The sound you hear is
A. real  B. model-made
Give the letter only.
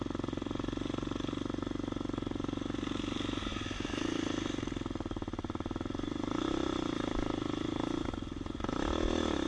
A